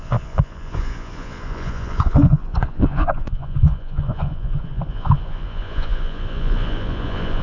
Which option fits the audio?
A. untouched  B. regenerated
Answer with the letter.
B